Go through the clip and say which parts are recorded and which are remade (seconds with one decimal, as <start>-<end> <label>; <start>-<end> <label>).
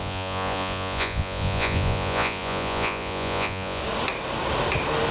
0.0-3.8 remade; 3.8-5.1 recorded